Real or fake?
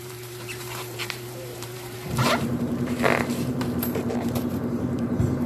fake